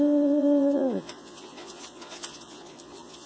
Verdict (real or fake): fake